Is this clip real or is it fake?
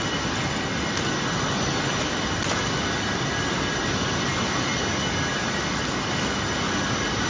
real